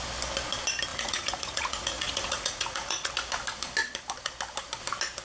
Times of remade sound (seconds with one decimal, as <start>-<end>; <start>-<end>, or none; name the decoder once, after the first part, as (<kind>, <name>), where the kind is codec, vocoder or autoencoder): 0.9-3.1 (vocoder, Vocos)

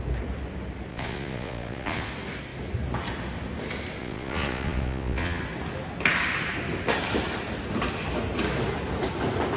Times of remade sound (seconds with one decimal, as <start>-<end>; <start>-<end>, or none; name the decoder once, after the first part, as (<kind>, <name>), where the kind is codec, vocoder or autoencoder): 0.9-2.1 (vocoder, Vocos); 4.0-5.4

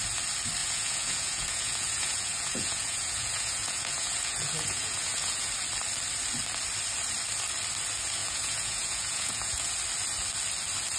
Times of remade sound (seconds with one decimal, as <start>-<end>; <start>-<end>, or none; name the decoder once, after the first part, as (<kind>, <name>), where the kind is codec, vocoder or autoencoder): 0.6-5.5 (vocoder, Vocos); 8.2-9.7